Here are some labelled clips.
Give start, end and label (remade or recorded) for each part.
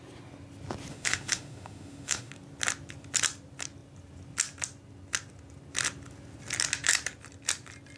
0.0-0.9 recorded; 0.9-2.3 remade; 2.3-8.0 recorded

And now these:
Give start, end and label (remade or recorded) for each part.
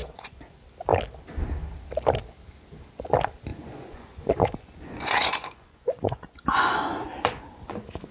0.0-0.5 remade; 0.5-3.5 recorded; 3.5-8.1 remade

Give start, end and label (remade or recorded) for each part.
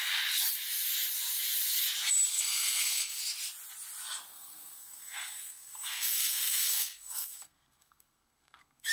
0.0-2.3 recorded; 2.3-3.2 remade; 3.2-4.3 recorded; 4.3-8.9 remade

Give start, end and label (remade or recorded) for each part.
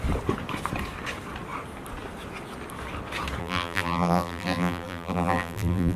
0.0-3.4 recorded; 3.4-6.0 remade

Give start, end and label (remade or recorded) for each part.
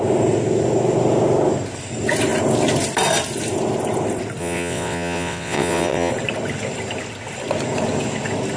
0.0-4.4 recorded; 4.4-6.1 remade; 6.1-8.6 recorded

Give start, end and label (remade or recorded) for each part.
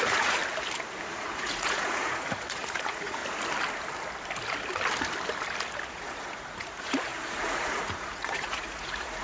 0.0-0.4 remade; 0.4-1.1 recorded; 1.1-3.2 remade; 3.2-5.9 recorded; 5.9-9.2 remade